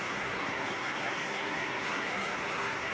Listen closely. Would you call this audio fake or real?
fake